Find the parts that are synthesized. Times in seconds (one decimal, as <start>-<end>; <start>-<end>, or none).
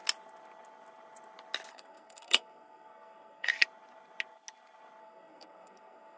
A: 1.7-3.5; 5.0-6.2